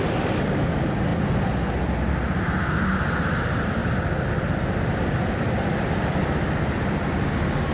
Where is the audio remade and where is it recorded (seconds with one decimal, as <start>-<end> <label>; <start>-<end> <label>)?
0.0-1.1 remade; 1.1-2.1 recorded; 2.1-7.7 remade